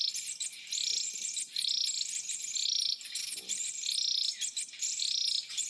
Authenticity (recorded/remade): recorded